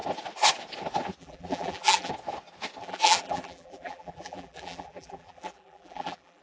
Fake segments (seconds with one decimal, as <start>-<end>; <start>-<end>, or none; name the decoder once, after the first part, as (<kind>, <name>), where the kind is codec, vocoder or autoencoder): 1.2-2.1 (vocoder, BigVGAN v2); 2.8-6.4